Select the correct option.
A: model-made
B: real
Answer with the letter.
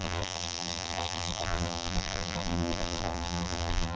A